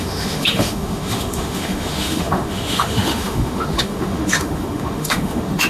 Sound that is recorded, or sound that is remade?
remade